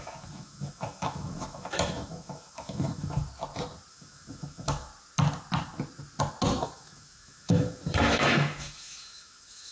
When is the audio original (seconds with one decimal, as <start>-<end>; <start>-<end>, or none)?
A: 3.2-3.9; 4.9-6.6